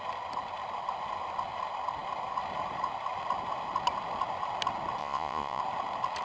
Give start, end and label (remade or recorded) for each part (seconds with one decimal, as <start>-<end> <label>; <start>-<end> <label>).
0.0-5.0 recorded; 5.0-5.6 remade; 5.6-6.2 recorded